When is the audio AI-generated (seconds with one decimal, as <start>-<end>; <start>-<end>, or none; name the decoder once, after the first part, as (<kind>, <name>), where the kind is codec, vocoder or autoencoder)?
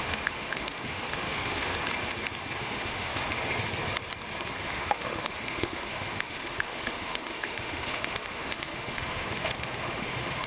0.0-1.7 (autoencoder, DAC-VAE); 2.6-3.1; 4.7-10.5